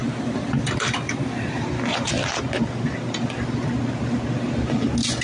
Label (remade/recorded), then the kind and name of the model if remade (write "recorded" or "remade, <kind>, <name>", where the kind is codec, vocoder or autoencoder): recorded